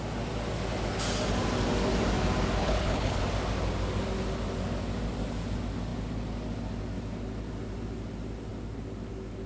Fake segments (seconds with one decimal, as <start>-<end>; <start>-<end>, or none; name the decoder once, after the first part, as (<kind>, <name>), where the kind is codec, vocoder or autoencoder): 2.6-3.2 (codec, HILCodec)